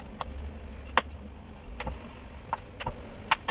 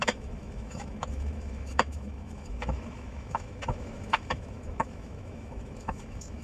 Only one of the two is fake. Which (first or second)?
second